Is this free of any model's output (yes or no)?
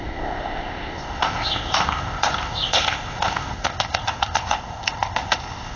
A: no